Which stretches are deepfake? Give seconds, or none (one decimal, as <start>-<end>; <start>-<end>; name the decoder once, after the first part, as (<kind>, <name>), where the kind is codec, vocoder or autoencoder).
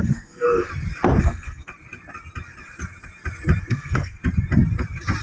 0.0-0.7 (codec, SNAC); 1.2-1.7; 3.7-4.2